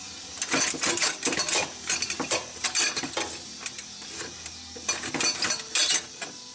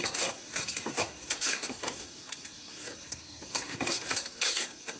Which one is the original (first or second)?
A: first